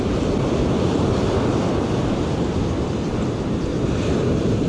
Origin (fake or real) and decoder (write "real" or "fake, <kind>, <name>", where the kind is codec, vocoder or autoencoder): real